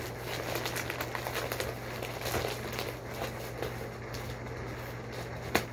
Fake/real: real